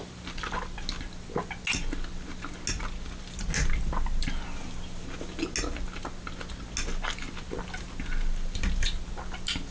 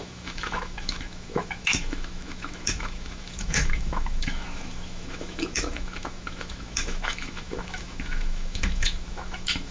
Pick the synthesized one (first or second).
second